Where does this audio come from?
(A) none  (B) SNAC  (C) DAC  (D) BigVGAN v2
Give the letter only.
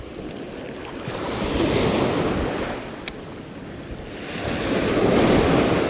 A